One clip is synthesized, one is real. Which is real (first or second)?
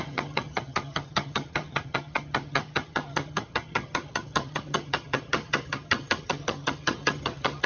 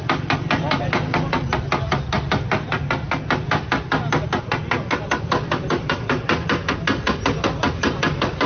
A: second